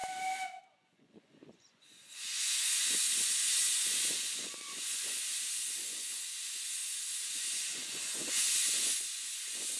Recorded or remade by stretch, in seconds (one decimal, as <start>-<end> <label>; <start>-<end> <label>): 0.0-0.6 recorded; 0.6-5.2 remade; 5.2-5.8 recorded; 5.8-9.8 remade